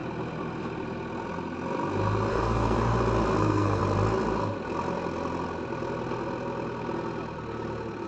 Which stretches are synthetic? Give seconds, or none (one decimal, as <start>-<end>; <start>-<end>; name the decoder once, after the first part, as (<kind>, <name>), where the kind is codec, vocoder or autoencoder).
2.3-2.9 (codec, SNAC); 3.4-3.8